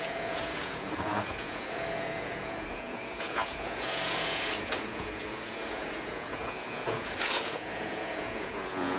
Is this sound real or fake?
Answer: fake